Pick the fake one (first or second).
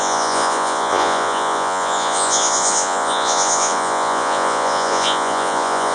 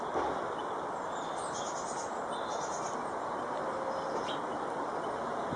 first